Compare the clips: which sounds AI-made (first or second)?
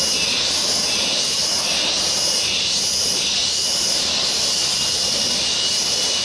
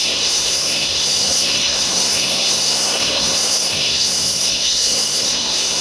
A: second